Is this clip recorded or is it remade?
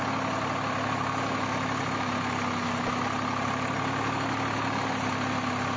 recorded